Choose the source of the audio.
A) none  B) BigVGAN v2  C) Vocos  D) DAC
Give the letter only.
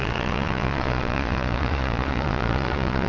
C